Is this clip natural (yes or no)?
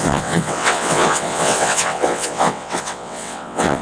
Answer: no